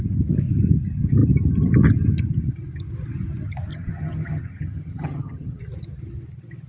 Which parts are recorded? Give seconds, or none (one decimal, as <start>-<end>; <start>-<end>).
0.0-3.7; 5.6-6.7